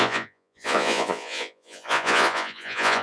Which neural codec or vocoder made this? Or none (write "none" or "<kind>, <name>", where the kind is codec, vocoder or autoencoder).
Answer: vocoder, Vocos